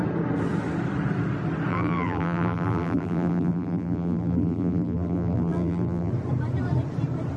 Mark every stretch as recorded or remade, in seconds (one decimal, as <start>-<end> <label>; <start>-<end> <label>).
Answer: 0.0-1.7 recorded; 1.7-6.1 remade; 6.1-7.4 recorded